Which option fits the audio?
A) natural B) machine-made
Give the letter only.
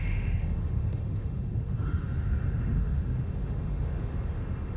B